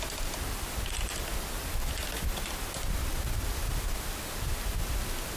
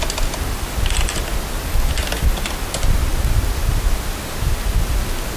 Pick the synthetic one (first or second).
first